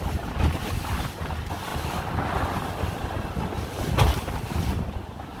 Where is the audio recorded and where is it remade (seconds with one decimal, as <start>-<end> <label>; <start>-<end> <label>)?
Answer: 0.0-5.4 recorded